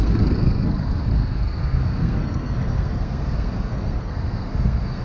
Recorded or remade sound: remade